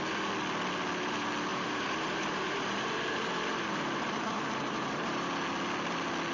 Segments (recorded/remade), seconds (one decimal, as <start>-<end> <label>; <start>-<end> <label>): 0.0-1.5 recorded; 1.5-5.3 remade; 5.3-6.3 recorded